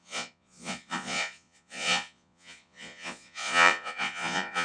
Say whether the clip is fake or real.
fake